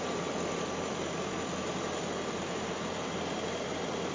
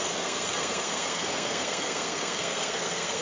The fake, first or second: second